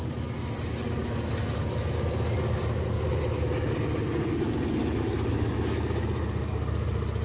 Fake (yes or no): no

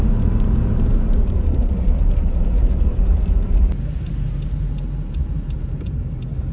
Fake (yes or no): yes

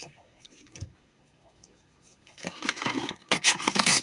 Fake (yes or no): yes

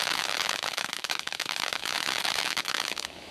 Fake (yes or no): yes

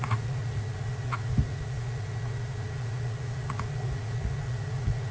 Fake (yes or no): yes